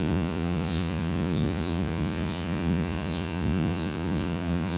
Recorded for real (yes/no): no